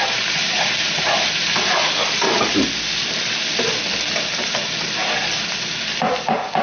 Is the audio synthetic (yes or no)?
no